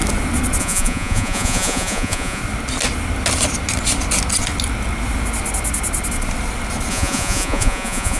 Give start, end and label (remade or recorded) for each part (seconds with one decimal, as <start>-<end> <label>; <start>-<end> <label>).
0.0-0.6 recorded; 0.6-2.4 remade; 2.4-6.9 recorded; 6.9-8.2 remade